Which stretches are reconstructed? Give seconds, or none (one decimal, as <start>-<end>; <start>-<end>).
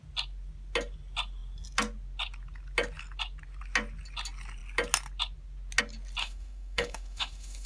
6.2-7.7